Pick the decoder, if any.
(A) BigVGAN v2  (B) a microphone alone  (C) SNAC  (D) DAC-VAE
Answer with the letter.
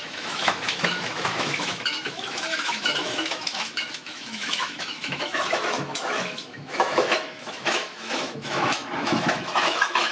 D